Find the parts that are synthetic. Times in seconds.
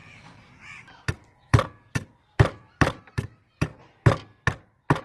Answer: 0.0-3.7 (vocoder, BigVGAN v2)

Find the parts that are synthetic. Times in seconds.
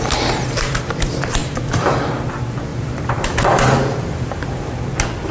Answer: 1.4-2.1 (vocoder, BigVGAN v2); 2.7-4.8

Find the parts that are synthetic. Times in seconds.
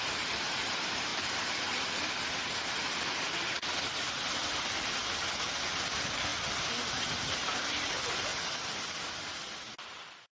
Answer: 0.0-6.3 (vocoder, BigVGAN v2); 7.2-8.3; 9.8-10.3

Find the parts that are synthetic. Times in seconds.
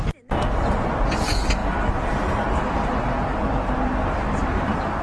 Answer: none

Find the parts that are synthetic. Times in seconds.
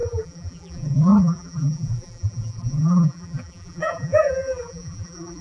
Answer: 0.0-5.4 (vocoder, BigVGAN v2)